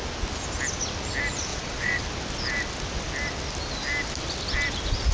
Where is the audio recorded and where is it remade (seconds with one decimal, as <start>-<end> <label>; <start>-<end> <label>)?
0.0-1.5 recorded; 1.5-2.0 remade; 2.0-5.1 recorded